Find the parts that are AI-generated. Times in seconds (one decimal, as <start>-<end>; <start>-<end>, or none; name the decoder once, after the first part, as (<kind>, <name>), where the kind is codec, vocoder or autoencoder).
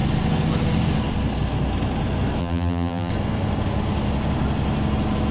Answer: 2.4-3.1 (vocoder, BigVGAN v2)